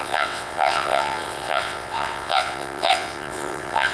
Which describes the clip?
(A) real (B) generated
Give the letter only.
B